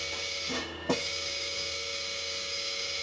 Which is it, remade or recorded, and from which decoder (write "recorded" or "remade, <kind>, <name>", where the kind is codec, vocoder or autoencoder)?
remade, codec, DAC